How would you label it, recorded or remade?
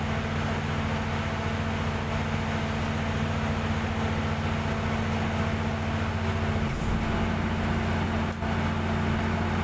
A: recorded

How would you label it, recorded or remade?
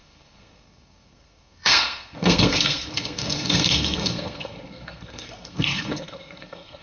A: remade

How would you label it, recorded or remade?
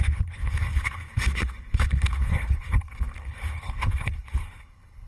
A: remade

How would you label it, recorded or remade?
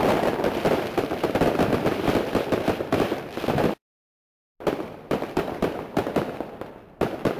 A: recorded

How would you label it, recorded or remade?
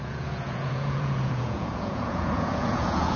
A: remade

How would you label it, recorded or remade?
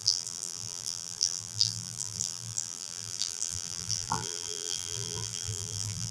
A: remade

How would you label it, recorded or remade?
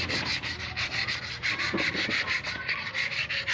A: recorded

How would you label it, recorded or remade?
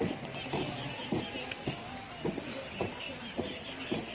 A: recorded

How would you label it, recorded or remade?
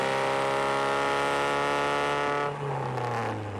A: recorded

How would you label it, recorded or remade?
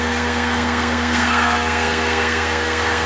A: remade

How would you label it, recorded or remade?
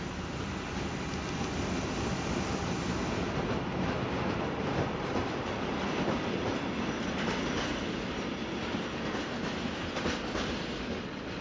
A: recorded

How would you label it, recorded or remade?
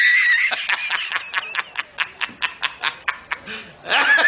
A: recorded